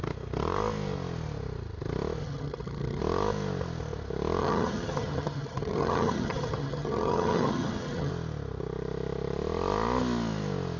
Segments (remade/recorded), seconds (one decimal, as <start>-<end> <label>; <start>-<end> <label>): 0.0-2.2 recorded; 2.2-3.0 remade; 3.0-4.4 recorded; 4.4-8.1 remade; 8.1-10.8 recorded